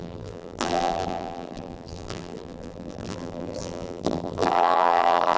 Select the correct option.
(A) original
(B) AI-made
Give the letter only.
B